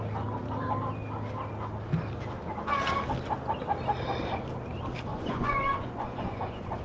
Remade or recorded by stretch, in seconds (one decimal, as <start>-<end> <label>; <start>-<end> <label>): 0.0-5.1 recorded; 5.1-6.8 remade